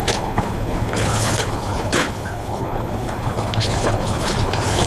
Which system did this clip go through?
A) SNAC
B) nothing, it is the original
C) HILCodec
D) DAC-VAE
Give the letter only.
C